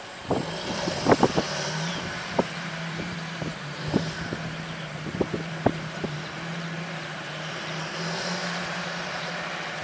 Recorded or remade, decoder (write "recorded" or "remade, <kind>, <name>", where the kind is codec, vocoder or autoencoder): remade, vocoder, BigVGAN v2